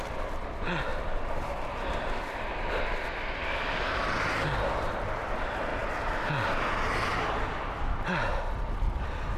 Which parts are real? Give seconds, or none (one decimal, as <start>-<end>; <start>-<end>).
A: 0.0-0.9; 2.1-9.4